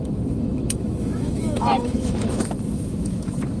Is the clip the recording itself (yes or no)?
no